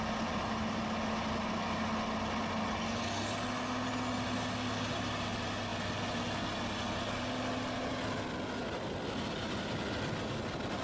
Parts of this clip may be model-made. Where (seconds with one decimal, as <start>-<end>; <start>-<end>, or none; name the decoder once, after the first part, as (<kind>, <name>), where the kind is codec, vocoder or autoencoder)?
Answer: none